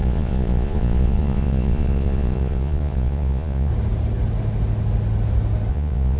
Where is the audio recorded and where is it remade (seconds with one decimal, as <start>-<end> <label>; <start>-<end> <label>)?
0.0-3.7 remade; 3.7-5.7 recorded; 5.7-6.2 remade